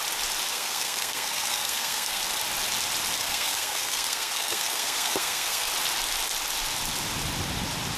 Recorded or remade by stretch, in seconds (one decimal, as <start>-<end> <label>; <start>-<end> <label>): 0.0-0.5 recorded; 0.5-2.2 remade; 2.2-3.2 recorded; 3.2-5.7 remade; 5.7-8.0 recorded